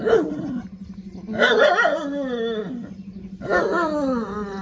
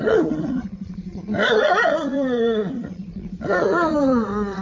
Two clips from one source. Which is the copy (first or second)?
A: second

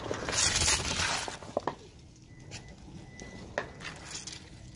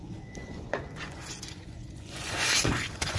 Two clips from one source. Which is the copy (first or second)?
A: second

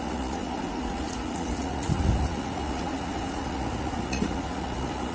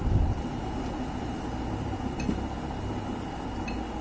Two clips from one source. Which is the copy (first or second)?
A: first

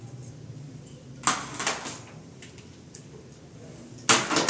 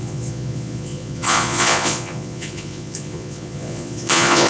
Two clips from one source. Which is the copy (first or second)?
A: second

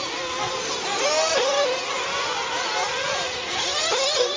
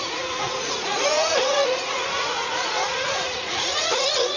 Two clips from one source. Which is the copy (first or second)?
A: second